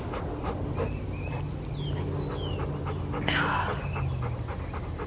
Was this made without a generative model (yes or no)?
yes